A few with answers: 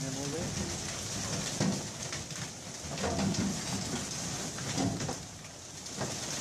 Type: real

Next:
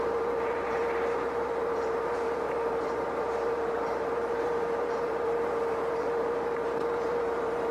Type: fake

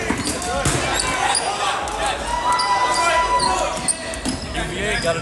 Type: real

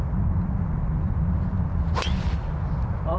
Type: real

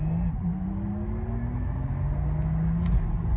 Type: real